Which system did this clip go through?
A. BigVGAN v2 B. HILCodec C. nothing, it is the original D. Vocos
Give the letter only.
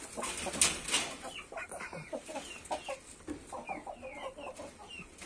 C